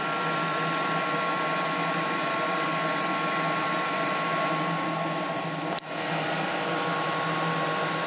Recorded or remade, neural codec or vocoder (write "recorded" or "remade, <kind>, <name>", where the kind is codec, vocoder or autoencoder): remade, vocoder, BigVGAN v2